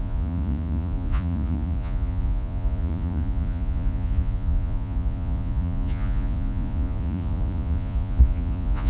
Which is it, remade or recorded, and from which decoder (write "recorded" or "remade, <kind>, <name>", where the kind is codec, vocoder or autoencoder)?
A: remade, vocoder, Vocos